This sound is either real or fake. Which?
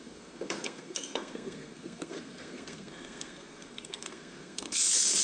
fake